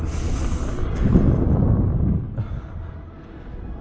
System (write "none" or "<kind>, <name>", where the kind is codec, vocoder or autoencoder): none